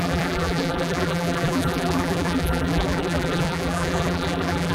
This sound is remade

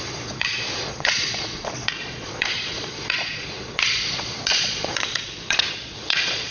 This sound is remade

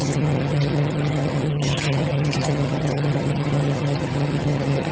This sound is remade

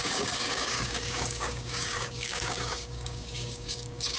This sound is remade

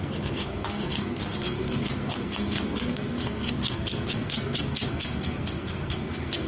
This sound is remade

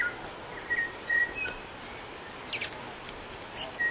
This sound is recorded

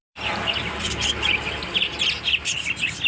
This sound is remade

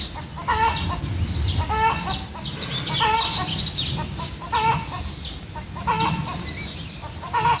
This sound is recorded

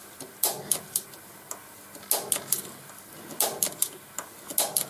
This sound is recorded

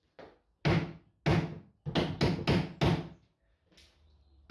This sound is recorded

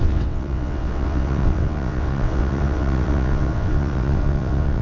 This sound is remade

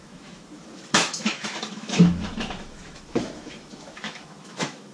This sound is remade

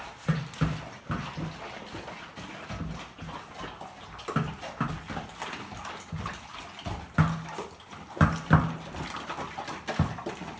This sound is recorded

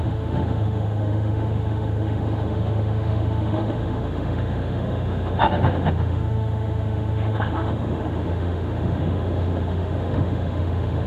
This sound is remade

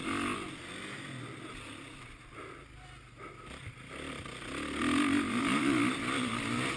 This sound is recorded